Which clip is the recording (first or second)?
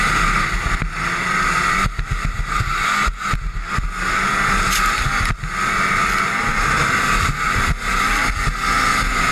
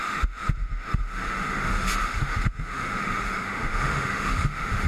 first